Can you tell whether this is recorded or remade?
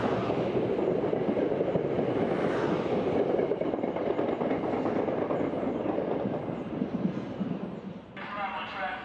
remade